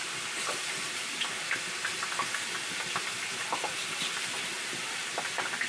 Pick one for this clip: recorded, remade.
recorded